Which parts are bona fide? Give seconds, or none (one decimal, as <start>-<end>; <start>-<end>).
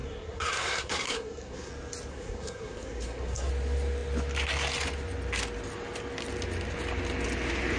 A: 1.7-2.1; 3.5-7.8